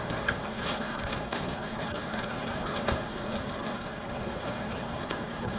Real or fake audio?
fake